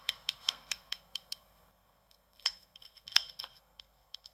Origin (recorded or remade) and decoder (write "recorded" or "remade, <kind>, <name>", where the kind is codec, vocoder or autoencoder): remade, codec, SNAC